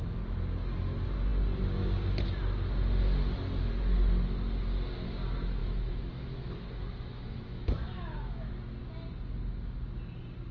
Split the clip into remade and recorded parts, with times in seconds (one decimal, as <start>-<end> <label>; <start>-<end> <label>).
0.0-5.6 recorded; 5.6-8.5 remade; 8.5-10.5 recorded